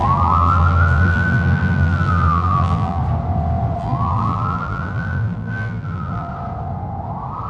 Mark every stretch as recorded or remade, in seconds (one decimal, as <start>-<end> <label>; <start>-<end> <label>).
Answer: 0.0-3.0 remade; 3.0-3.8 recorded; 3.8-6.3 remade; 6.3-7.5 recorded